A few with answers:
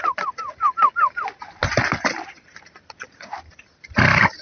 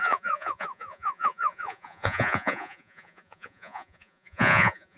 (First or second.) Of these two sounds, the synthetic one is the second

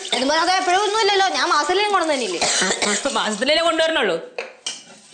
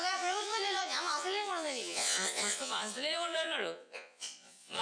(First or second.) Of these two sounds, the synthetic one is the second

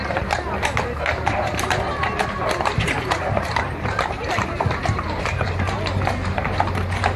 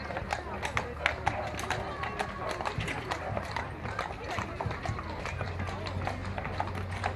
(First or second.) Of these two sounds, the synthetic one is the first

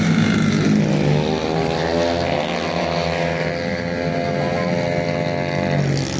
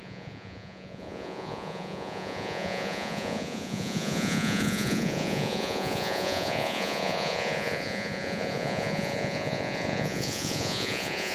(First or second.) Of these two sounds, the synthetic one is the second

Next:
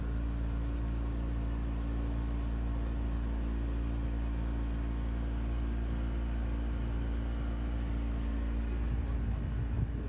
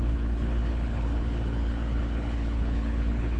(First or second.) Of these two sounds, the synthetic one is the second